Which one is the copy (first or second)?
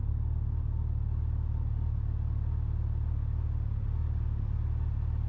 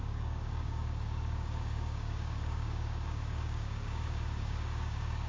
second